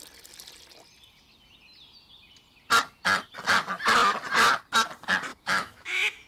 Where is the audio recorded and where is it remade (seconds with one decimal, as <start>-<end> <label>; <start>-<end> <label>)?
0.0-5.3 recorded; 5.3-6.3 remade